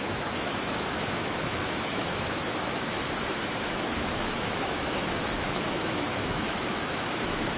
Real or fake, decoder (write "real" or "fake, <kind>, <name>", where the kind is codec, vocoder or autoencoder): fake, autoencoder, DAC-VAE